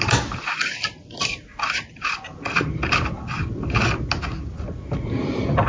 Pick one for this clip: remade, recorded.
recorded